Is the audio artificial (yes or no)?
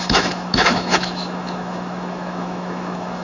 yes